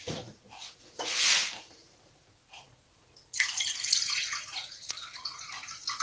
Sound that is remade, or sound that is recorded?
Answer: remade